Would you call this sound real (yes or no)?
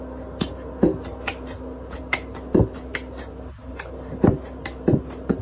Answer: yes